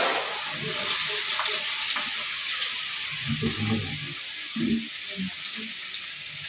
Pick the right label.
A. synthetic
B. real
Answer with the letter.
B